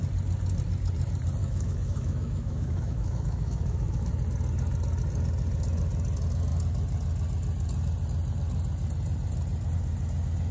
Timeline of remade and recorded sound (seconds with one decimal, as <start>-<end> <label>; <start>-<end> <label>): 0.0-1.4 recorded; 1.4-4.1 remade; 4.1-10.5 recorded